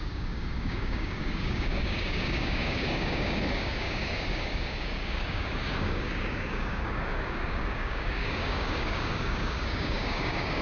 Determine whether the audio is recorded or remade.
remade